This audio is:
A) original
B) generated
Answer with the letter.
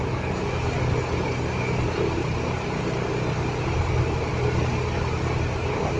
A